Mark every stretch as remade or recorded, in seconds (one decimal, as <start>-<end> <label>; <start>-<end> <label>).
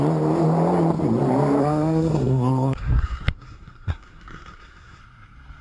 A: 0.0-1.6 recorded; 1.6-5.0 remade; 5.0-5.6 recorded